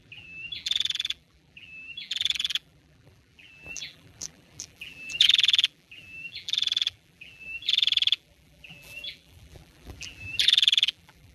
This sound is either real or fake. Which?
fake